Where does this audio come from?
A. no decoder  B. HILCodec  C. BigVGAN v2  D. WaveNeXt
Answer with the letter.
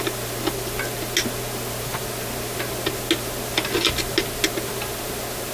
A